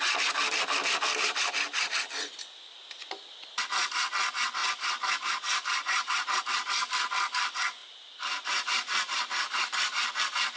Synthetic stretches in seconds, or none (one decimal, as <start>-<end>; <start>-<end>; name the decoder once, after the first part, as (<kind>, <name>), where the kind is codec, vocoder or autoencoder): 4.6-6.4 (vocoder, BigVGAN v2); 7.8-10.2